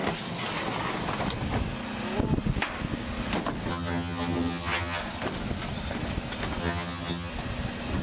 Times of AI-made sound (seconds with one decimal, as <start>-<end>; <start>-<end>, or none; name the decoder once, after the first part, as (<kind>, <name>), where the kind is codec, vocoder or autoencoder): 3.7-5.0 (vocoder, HiFi-GAN); 6.6-7.3